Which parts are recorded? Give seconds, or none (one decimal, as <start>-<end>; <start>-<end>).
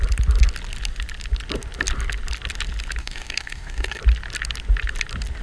0.0-3.0; 4.0-5.4